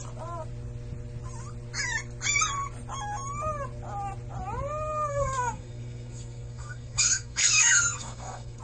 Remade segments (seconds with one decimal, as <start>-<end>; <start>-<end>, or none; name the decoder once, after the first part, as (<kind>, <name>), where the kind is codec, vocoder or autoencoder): 5.1-8.6 (codec, SNAC)